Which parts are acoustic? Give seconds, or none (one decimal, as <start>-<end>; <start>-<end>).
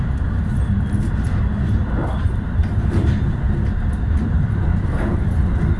0.0-2.0; 3.1-5.8